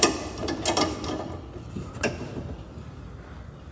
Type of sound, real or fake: real